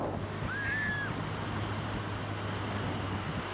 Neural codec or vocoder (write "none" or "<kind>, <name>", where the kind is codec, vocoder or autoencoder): none